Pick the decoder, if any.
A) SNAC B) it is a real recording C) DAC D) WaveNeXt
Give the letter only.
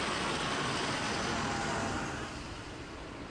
B